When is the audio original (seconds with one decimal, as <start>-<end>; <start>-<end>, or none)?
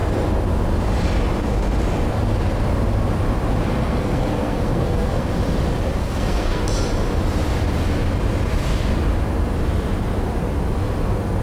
0.0-3.8; 5.3-6.0; 6.6-11.4